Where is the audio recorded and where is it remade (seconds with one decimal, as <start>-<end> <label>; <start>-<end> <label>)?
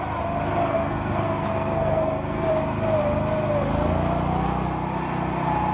0.0-0.7 recorded; 0.7-2.5 remade; 2.5-5.7 recorded